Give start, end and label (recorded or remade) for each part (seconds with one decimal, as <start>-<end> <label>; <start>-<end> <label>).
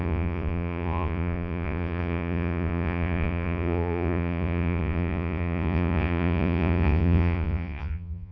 0.0-8.3 remade